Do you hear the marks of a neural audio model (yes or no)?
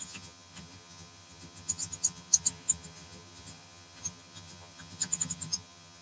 yes